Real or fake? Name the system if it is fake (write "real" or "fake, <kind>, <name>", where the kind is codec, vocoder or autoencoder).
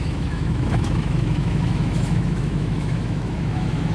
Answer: fake, autoencoder, DAC-VAE